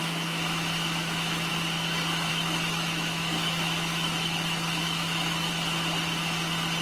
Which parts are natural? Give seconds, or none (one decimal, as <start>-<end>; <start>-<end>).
1.5-2.3; 5.5-6.8